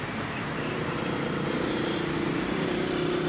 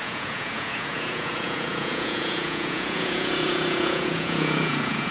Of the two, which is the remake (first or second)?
second